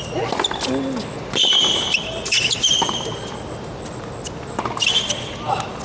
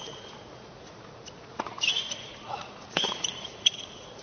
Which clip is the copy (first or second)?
second